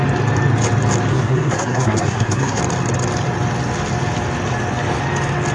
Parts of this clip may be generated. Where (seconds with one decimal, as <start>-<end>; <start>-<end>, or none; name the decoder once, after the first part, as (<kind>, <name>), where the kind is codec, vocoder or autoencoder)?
1.1-2.6 (codec, SNAC)